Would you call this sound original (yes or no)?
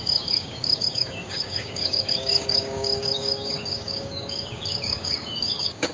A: no